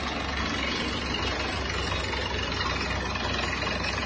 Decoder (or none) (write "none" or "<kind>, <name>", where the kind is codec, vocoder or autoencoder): none